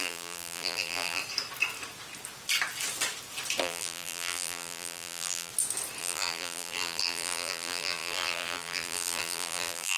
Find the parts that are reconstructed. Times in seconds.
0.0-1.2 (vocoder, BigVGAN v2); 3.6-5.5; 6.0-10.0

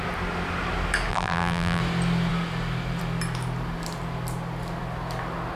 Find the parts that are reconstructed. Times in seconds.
1.1-1.8 (vocoder, BigVGAN v2)

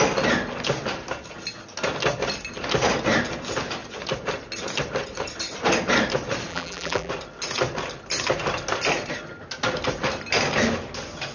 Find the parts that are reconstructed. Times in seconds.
6.5-7.1 (vocoder, BigVGAN v2)

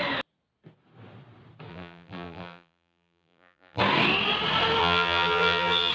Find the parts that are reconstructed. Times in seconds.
1.7-3.8 (vocoder, BigVGAN v2); 4.8-5.9

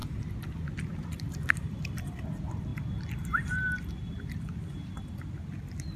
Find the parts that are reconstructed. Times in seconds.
none

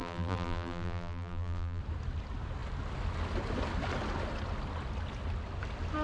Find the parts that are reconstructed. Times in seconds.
0.0-1.8 (vocoder, BigVGAN v2)